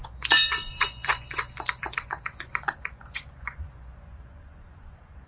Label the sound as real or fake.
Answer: fake